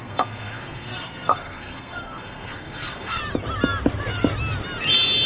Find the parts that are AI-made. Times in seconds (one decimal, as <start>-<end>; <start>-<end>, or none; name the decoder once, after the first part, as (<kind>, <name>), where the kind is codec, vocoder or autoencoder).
0.0-3.2 (codec, SNAC)